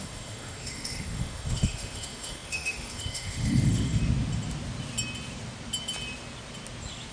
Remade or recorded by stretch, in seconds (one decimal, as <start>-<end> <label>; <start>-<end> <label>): 0.0-4.0 remade; 4.0-7.1 recorded